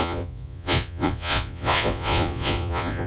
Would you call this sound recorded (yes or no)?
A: no